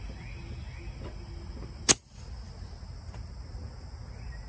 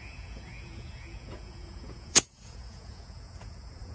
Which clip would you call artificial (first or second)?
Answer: second